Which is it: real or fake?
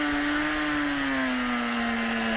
real